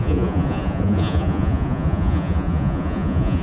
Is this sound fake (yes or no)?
yes